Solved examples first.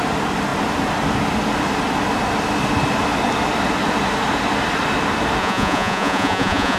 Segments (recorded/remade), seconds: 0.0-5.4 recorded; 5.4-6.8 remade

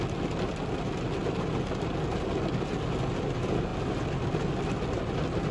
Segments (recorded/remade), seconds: 0.0-5.5 recorded

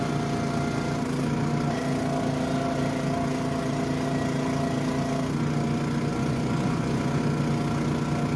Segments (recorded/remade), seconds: 0.0-6.1 recorded; 6.1-7.2 remade; 7.2-8.4 recorded

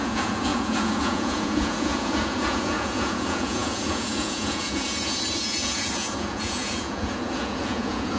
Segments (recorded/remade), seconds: 0.0-8.2 remade

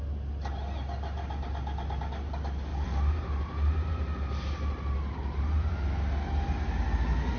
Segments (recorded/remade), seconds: 0.0-7.4 recorded

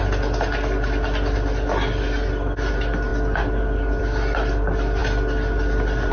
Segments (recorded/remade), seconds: 0.0-6.1 recorded

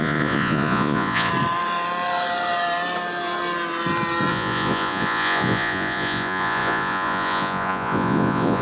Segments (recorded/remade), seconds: 0.0-1.3 remade; 1.3-4.3 recorded; 4.3-8.6 remade

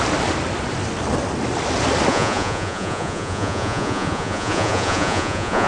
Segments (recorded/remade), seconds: 0.0-2.1 recorded; 2.1-5.7 remade